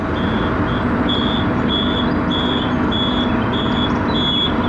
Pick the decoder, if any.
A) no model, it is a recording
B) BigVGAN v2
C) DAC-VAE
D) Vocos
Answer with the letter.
A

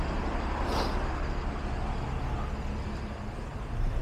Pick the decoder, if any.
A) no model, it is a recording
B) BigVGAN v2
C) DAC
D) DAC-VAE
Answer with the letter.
A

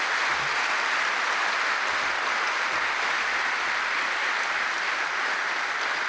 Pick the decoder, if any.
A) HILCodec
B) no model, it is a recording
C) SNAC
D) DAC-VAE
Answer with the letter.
B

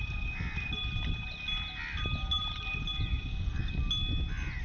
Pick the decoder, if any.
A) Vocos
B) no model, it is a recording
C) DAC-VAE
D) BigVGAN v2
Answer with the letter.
B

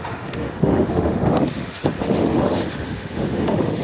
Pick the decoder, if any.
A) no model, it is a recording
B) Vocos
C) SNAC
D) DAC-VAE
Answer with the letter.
D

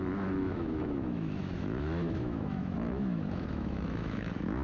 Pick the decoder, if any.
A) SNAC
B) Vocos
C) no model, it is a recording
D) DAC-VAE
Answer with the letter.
D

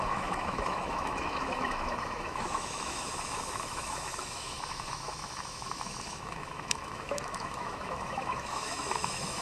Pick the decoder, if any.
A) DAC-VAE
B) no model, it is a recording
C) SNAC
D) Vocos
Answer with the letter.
A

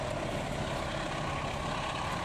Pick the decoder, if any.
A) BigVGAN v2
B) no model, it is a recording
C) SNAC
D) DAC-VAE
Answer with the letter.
B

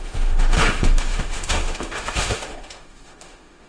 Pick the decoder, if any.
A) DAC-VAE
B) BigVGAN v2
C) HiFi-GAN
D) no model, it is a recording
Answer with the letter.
A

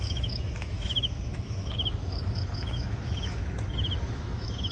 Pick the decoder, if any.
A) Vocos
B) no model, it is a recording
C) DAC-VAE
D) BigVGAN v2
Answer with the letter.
C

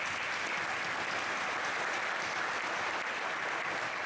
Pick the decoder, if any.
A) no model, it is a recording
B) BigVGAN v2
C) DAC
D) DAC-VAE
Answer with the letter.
A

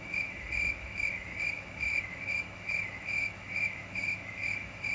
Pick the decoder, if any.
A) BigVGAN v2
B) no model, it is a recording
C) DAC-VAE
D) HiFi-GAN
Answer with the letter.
C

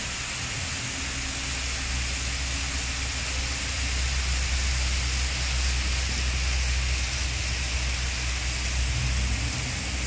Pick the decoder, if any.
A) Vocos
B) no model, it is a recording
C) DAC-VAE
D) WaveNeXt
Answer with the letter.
B